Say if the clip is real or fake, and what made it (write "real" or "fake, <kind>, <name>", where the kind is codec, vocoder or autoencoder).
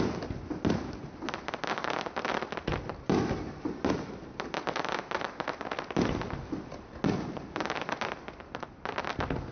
real